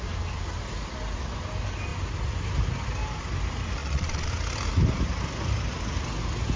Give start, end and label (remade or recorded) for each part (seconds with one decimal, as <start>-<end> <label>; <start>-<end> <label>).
0.0-3.8 recorded; 3.8-4.3 remade; 4.3-6.6 recorded